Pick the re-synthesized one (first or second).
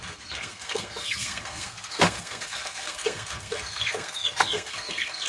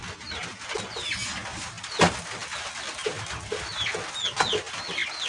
first